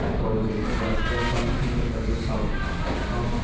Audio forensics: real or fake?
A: real